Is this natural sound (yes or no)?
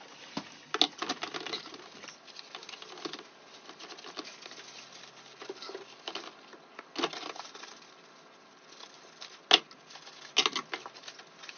yes